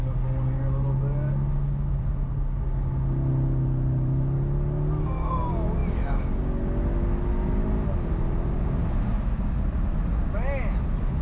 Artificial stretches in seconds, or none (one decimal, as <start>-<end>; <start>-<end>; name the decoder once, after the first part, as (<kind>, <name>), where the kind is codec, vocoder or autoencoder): none